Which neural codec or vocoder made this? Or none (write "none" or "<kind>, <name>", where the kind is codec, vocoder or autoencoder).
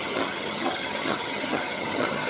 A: vocoder, HiFi-GAN